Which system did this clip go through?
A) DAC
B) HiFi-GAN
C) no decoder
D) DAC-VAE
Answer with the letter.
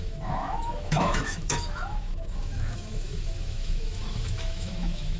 D